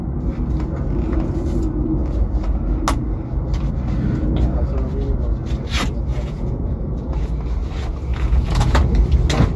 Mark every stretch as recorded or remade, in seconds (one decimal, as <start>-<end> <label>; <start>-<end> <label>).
0.0-6.1 recorded; 6.1-7.3 remade; 7.3-8.1 recorded; 8.1-8.8 remade; 8.8-9.6 recorded